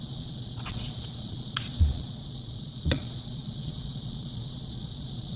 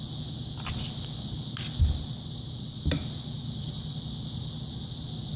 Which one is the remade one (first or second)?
first